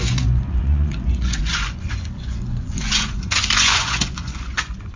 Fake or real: fake